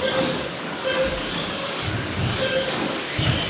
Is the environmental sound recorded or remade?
remade